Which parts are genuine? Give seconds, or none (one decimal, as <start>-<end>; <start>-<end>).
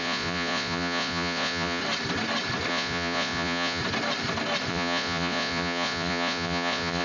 1.8-2.7; 3.8-4.7